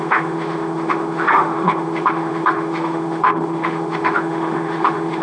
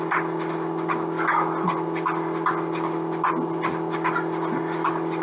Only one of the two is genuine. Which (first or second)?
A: second